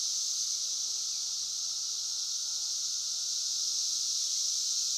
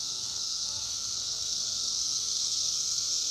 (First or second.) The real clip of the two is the first